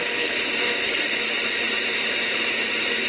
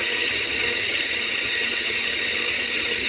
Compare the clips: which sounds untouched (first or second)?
first